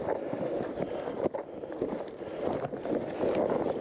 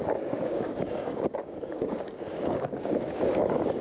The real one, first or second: first